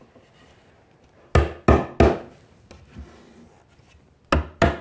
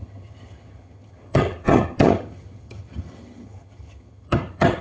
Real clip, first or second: first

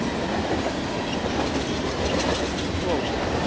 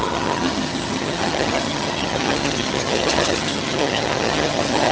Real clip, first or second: first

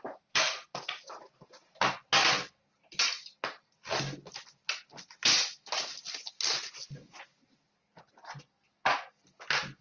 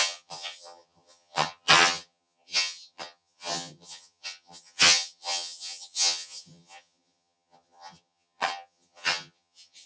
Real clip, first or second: first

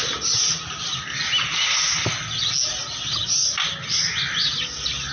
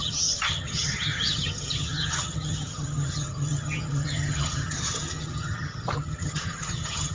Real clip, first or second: first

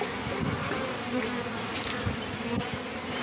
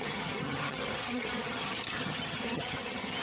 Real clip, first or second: first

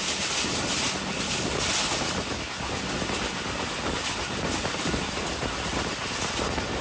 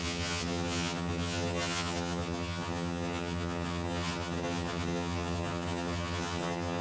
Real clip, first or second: first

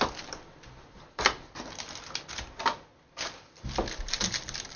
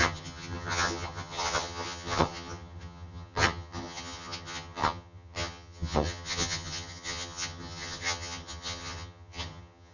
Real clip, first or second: first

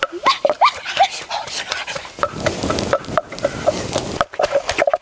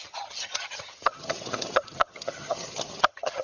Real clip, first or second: first